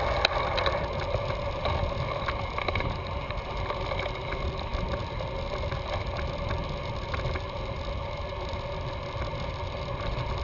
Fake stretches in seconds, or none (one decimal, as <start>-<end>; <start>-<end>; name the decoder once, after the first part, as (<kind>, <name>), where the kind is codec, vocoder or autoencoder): none